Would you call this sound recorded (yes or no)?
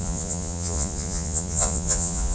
no